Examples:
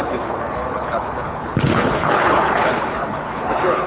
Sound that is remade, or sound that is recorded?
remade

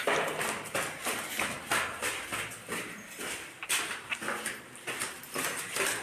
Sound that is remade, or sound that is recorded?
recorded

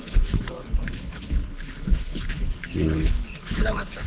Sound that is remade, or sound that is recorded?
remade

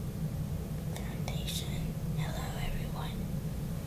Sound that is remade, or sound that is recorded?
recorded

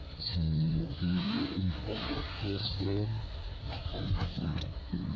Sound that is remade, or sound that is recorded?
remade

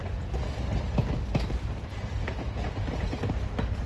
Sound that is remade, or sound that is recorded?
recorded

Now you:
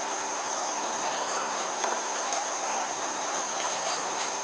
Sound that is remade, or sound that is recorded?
remade